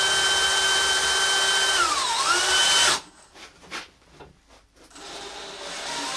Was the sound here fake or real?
real